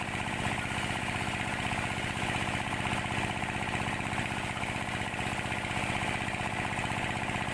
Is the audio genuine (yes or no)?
yes